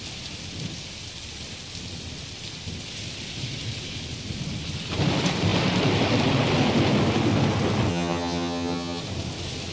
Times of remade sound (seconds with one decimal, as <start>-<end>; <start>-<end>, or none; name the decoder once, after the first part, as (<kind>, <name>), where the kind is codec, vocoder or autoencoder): 7.9-9.0 (vocoder, HiFi-GAN)